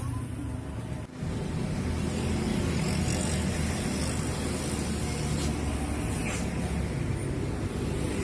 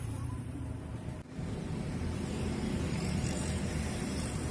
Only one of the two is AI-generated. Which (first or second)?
second